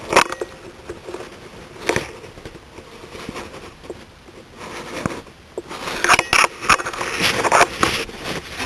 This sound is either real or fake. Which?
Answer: real